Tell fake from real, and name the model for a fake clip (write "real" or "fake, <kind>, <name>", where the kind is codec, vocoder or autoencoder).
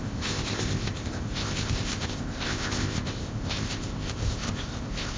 fake, codec, ZipCodec